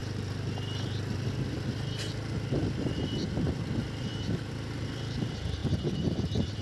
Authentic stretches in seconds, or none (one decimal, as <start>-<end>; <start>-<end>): 0.0-1.3